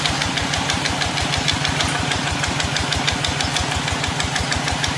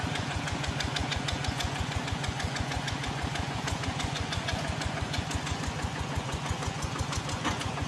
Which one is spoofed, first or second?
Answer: second